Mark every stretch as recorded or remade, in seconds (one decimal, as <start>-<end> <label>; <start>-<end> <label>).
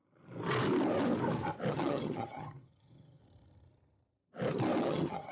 0.0-1.7 recorded; 1.7-3.2 remade; 3.2-4.8 recorded; 4.8-5.3 remade